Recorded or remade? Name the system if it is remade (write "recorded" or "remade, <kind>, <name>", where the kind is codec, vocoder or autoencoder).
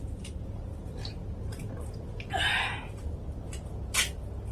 recorded